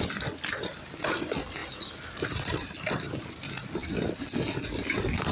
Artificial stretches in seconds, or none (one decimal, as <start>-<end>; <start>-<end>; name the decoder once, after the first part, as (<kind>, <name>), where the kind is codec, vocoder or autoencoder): none